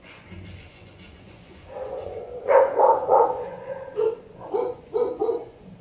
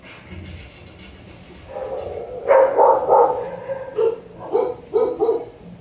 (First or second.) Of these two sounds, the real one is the second